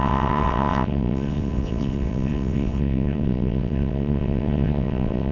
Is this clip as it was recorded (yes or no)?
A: no